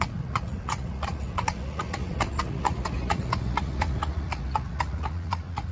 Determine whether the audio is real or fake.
fake